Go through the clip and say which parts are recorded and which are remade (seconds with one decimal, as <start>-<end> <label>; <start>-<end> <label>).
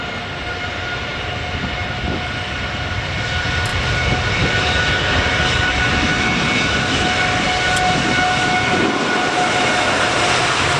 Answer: 0.0-10.8 recorded